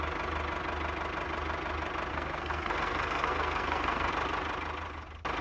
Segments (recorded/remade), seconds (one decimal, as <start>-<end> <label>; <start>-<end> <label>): 0.0-2.1 recorded; 2.1-4.1 remade; 4.1-5.4 recorded